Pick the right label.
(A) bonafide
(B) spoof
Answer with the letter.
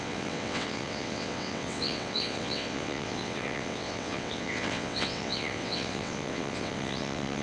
B